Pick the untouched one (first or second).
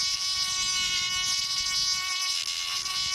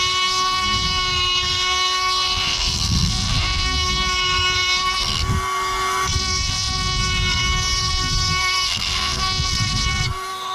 first